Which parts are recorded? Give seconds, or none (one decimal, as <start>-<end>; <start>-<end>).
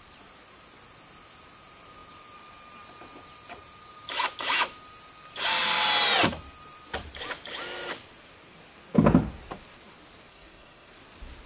0.0-10.3; 10.9-11.5